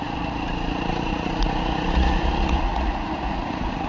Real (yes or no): no